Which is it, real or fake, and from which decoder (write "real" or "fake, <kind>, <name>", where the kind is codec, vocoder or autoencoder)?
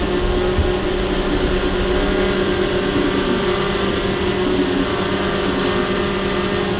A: real